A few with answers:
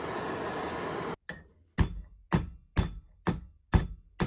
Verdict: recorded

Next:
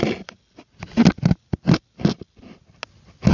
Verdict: recorded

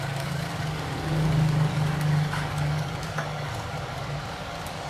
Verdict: remade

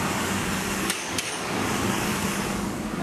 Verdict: remade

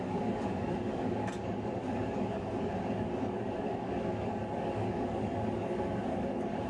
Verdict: remade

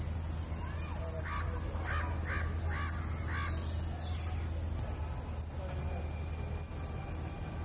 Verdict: recorded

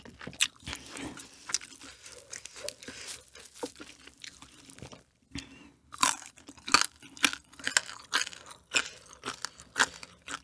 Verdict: recorded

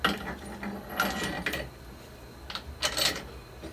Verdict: recorded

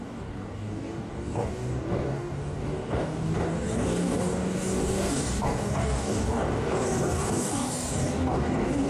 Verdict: remade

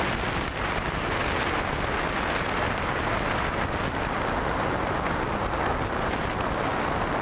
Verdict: recorded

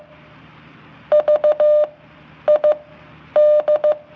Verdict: recorded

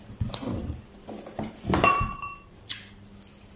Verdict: recorded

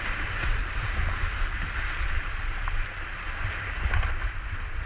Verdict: recorded